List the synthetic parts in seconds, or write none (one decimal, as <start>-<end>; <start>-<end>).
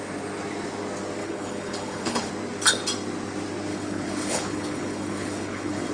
1.2-2.3; 3.7-5.9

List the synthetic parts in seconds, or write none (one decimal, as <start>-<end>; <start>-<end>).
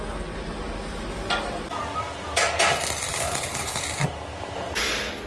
3.1-3.8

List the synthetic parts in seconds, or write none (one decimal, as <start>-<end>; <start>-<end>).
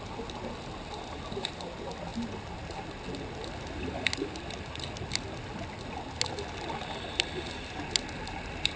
none